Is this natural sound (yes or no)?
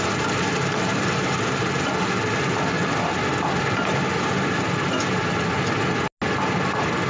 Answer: yes